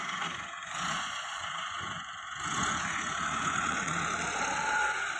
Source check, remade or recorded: remade